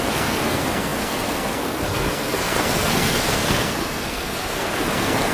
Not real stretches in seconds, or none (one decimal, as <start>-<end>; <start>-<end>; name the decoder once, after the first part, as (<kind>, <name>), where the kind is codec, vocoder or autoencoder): 0.0-5.3 (codec, SNAC)